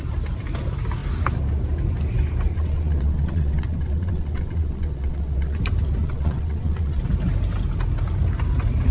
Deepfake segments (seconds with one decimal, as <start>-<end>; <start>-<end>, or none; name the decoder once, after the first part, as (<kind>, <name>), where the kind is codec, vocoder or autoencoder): 2.5-5.6 (vocoder, WaveNeXt); 6.0-7.0